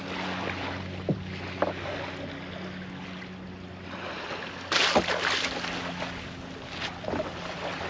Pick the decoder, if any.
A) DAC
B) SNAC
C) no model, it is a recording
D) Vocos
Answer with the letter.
C